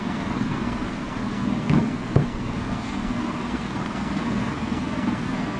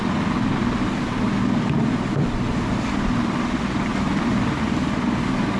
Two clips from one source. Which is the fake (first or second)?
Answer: first